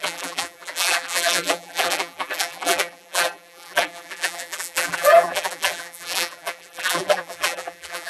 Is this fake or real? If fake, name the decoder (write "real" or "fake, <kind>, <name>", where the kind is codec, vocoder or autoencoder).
fake, vocoder, BigVGAN v2